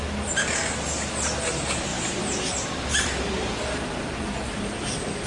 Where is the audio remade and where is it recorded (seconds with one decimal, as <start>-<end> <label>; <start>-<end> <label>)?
0.0-1.9 recorded; 1.9-5.3 remade